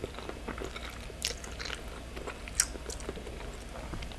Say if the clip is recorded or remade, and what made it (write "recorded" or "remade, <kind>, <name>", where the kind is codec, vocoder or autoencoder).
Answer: recorded